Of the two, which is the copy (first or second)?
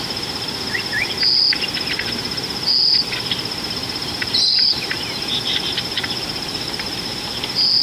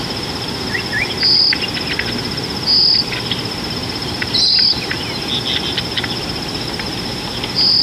first